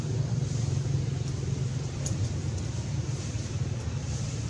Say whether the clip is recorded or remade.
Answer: recorded